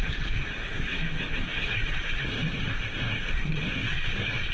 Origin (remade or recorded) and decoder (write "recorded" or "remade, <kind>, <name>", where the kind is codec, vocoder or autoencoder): remade, codec, SNAC